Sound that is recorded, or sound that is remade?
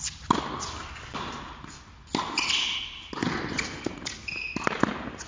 recorded